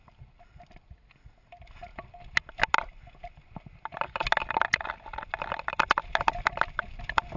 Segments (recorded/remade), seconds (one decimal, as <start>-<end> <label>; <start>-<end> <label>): 0.0-7.4 recorded